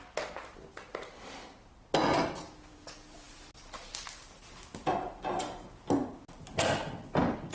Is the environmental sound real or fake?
real